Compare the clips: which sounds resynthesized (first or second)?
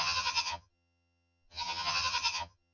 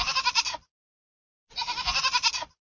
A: first